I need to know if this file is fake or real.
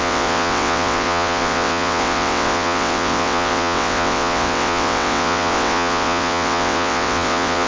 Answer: fake